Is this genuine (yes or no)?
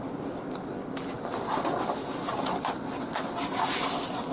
yes